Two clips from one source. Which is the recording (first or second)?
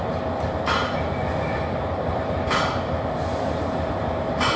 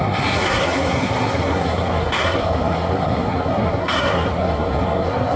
first